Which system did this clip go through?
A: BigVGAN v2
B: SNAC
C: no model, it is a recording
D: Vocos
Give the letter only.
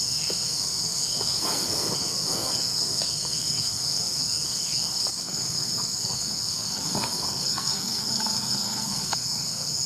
B